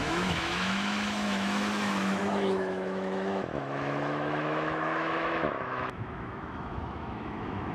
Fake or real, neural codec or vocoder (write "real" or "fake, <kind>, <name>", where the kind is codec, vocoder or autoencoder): fake, autoencoder, DAC-VAE